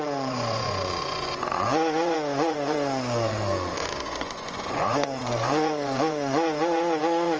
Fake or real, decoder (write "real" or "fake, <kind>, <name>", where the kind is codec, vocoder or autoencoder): fake, vocoder, Vocos